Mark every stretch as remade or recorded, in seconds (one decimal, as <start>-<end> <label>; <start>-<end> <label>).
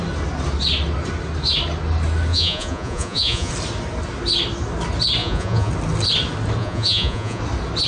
0.0-2.3 recorded; 2.3-3.5 remade; 3.5-5.2 recorded; 5.2-5.7 remade; 5.7-6.6 recorded; 6.6-7.4 remade; 7.4-7.9 recorded